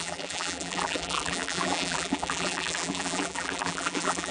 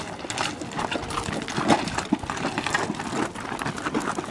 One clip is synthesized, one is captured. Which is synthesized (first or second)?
first